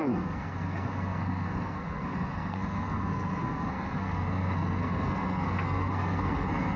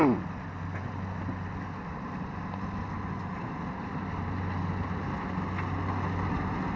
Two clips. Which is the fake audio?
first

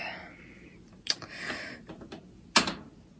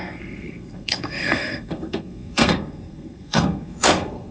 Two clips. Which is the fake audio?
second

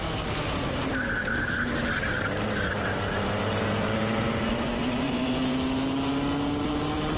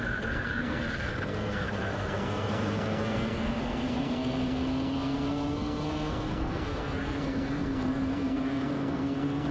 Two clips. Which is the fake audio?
second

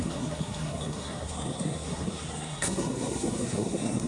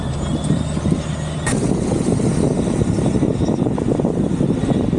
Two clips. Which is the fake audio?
first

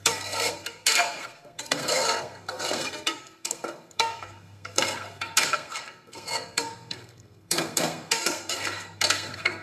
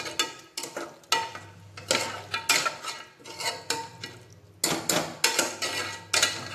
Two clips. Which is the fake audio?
first